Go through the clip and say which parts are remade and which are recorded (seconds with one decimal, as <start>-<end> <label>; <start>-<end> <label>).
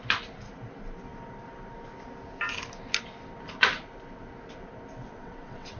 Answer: 0.0-5.0 recorded; 5.0-5.8 remade